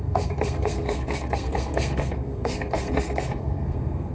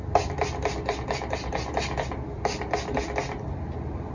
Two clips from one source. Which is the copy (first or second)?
first